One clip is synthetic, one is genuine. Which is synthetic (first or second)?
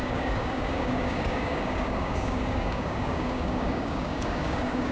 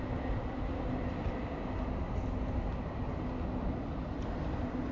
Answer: first